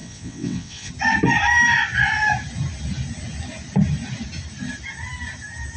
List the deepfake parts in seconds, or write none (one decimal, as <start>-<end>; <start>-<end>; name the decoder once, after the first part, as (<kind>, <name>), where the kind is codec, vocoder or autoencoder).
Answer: 0.0-0.9 (vocoder, WaveNeXt)